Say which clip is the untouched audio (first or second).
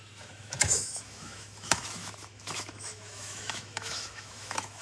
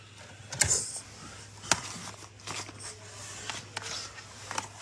second